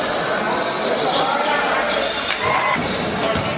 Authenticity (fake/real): real